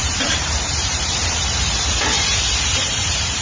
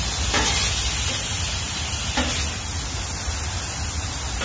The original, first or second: second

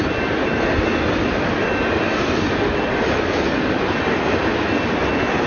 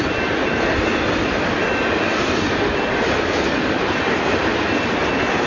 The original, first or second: first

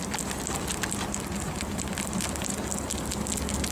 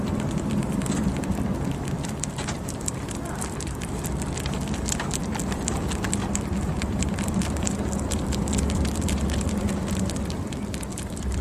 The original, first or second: first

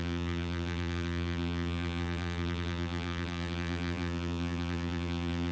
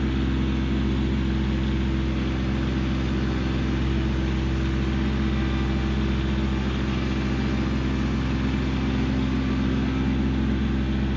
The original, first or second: second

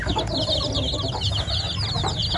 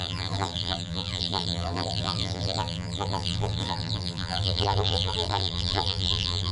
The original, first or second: first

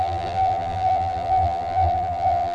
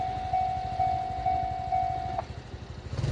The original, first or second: second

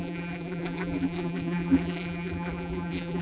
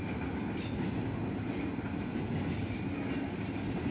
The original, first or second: second